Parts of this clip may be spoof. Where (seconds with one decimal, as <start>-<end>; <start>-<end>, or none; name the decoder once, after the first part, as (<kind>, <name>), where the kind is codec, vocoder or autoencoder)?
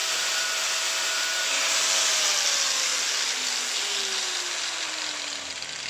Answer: none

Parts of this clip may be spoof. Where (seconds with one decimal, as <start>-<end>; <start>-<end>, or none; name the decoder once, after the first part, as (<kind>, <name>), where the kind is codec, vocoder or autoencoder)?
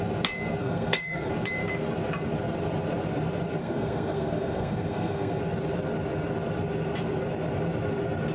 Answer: 0.6-1.3 (codec, SNAC); 3.6-5.4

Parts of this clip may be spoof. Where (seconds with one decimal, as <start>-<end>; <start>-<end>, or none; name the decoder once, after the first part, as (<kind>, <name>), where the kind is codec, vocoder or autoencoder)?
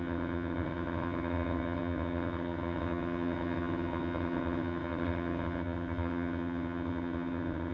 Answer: 0.0-7.7 (vocoder, HiFi-GAN)